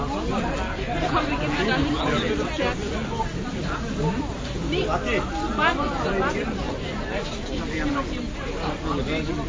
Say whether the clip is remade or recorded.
recorded